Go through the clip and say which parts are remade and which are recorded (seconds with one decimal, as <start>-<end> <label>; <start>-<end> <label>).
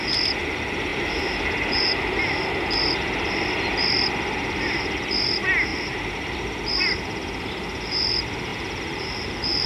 0.0-0.9 recorded; 0.9-1.9 remade; 1.9-5.7 recorded; 5.7-6.4 remade; 6.4-8.5 recorded; 8.5-9.7 remade